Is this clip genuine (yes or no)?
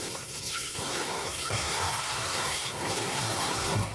no